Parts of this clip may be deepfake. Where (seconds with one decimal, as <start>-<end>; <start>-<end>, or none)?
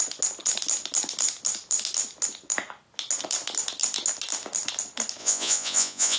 5.2-6.2